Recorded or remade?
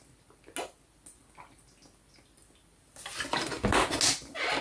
recorded